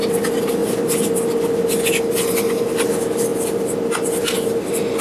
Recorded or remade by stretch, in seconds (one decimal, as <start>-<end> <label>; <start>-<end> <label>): 0.0-5.0 recorded